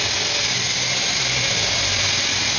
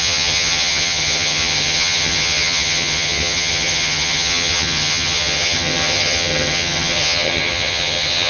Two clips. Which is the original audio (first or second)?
first